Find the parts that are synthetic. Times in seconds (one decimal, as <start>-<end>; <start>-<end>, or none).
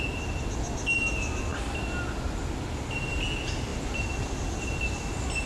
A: none